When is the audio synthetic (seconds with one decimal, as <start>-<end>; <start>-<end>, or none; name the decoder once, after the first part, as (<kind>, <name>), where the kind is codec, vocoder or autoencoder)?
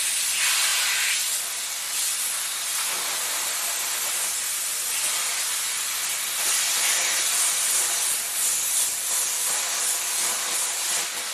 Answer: none